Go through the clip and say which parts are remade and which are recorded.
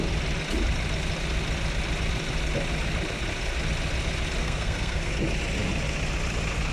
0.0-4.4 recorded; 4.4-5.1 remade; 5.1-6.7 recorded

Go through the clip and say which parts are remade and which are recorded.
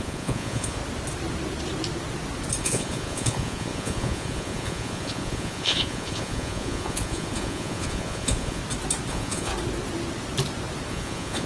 0.0-0.8 remade; 0.8-2.6 recorded; 2.6-8.6 remade; 8.6-9.1 recorded; 9.1-9.5 remade; 9.5-10.9 recorded; 10.9-11.5 remade